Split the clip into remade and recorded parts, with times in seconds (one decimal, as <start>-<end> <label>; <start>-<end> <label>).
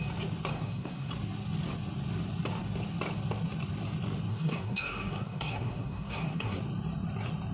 0.0-0.5 recorded; 0.5-1.1 remade; 1.1-4.3 recorded; 4.3-6.6 remade; 6.6-7.5 recorded